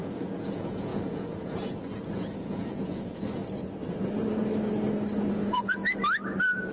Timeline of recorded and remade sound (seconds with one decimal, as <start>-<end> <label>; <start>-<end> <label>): 0.0-3.4 remade; 3.4-5.3 recorded; 5.3-5.8 remade; 5.8-6.7 recorded